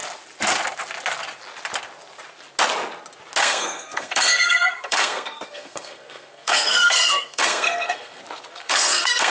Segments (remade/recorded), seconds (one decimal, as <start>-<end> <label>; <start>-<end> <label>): 0.0-3.4 recorded; 3.4-8.2 remade; 8.2-8.6 recorded; 8.6-9.3 remade